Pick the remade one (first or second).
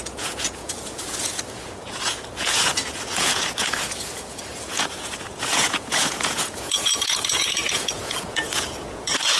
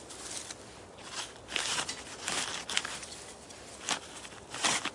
first